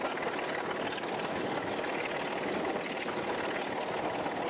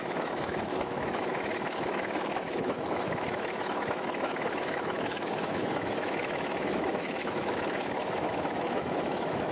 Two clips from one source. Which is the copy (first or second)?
second